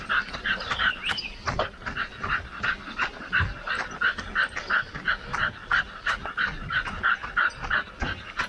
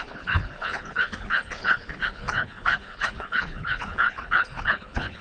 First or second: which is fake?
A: second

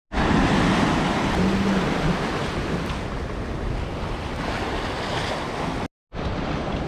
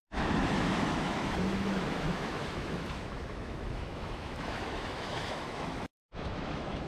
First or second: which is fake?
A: second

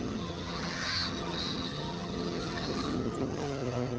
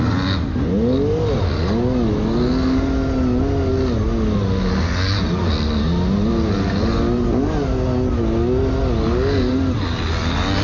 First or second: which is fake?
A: first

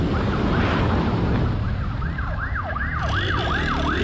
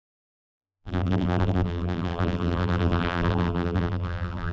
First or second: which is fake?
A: second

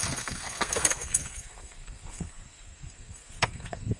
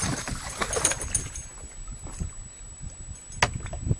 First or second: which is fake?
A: first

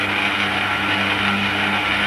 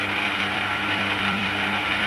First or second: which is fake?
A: second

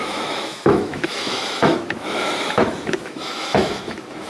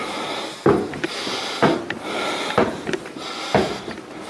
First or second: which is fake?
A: first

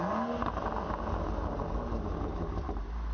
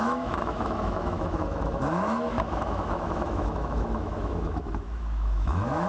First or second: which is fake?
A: second